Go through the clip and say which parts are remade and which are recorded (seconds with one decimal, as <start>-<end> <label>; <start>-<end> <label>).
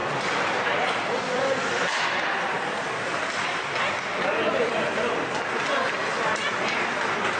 0.0-3.8 remade; 3.8-6.0 recorded; 6.0-6.9 remade; 6.9-7.4 recorded